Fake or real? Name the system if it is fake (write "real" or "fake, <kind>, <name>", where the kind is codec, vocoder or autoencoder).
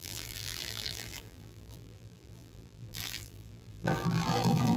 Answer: fake, vocoder, BigVGAN v2